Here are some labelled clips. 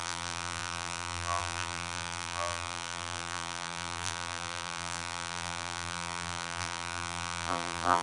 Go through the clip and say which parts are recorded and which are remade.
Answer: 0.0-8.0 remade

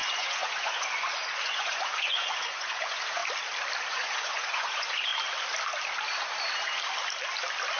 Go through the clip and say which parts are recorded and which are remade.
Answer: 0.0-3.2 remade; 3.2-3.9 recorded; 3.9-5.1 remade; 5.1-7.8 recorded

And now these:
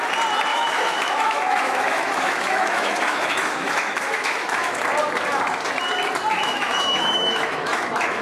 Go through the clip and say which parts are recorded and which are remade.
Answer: 0.0-0.5 recorded; 0.5-4.8 remade; 4.8-6.3 recorded; 6.3-8.2 remade

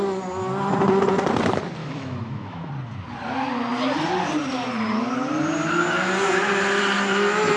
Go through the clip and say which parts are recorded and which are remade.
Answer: 0.0-1.8 recorded; 1.8-2.7 remade; 2.7-7.6 recorded

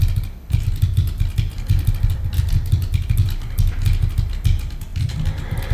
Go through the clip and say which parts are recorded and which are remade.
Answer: 0.0-5.7 recorded